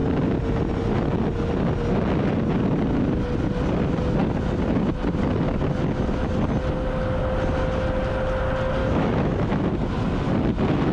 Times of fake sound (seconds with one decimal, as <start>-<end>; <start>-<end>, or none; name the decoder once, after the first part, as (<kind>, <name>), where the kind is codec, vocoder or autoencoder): 8.8-9.7 (autoencoder, DAC-VAE)